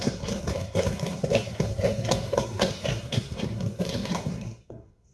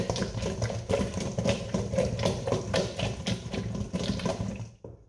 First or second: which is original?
second